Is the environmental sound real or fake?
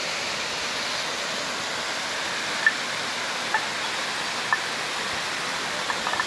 real